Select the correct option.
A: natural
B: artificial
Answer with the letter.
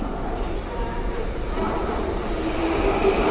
B